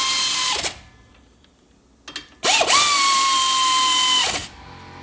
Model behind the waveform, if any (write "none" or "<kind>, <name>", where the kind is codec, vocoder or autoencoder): none